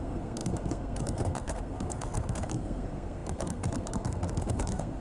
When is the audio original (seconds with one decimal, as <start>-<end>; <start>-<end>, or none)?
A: none